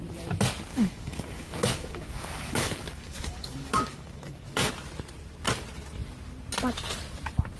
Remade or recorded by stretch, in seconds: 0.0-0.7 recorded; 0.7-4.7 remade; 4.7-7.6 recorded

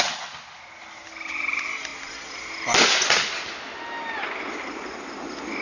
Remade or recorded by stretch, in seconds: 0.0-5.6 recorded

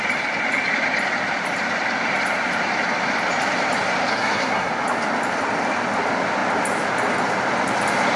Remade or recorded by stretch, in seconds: 0.0-4.1 recorded; 4.1-4.7 remade; 4.7-8.2 recorded

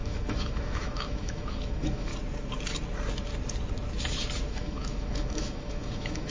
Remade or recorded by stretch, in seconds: 0.0-2.1 remade; 2.1-4.5 recorded; 4.5-6.3 remade

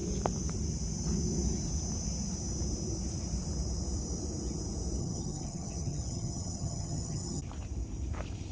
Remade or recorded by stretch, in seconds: 0.0-5.0 recorded; 5.0-7.4 remade; 7.4-8.5 recorded

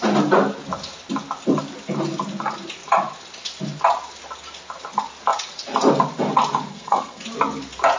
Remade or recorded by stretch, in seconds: 0.0-6.7 recorded; 6.7-7.2 remade; 7.2-8.0 recorded